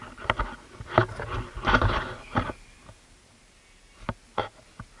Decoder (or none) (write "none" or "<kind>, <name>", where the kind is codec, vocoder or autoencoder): none